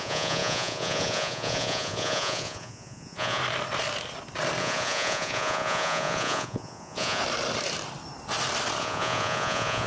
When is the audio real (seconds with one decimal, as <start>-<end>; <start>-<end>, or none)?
3.4-4.6; 7.2-8.8

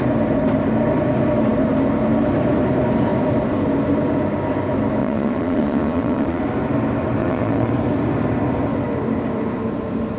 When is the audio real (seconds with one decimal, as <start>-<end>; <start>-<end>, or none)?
0.0-5.0; 6.4-7.2; 7.7-10.2

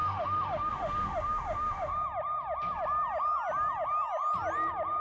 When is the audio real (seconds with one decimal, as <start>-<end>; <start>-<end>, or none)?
1.9-5.0

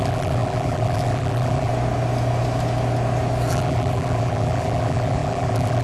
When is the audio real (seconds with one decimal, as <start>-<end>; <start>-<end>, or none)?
1.7-3.5

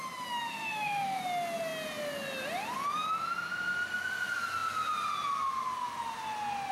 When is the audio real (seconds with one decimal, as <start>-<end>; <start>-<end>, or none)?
0.0-0.5; 1.2-6.7